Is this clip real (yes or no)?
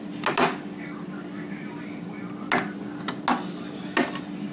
yes